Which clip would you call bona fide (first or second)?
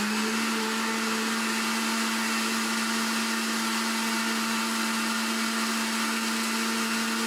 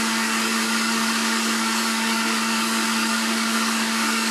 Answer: first